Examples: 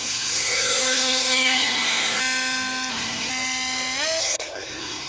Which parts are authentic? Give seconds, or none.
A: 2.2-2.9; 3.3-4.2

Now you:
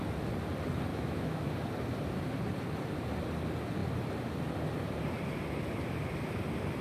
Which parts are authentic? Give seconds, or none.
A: 0.0-0.9; 1.5-6.8

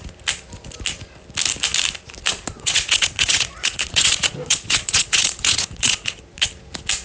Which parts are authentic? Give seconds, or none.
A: 0.0-2.3; 6.5-7.0

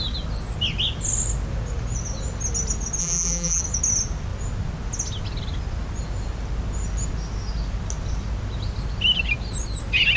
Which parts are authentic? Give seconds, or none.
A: 0.0-3.0; 3.6-10.2

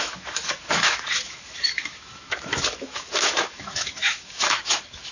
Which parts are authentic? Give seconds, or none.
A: none

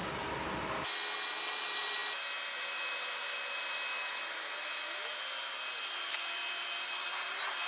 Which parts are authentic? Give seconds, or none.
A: 0.0-7.7